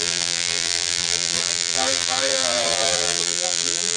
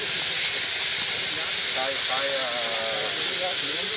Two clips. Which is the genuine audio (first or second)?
second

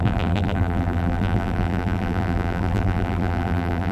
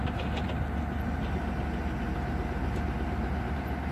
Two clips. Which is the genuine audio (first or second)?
second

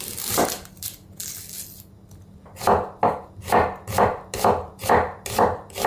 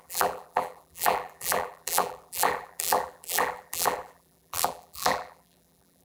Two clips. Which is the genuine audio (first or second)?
first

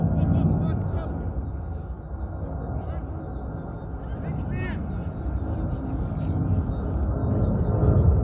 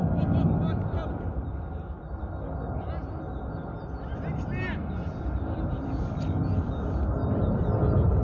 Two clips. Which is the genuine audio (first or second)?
first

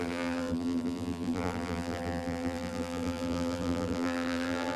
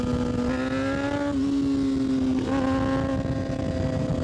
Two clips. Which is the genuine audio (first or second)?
second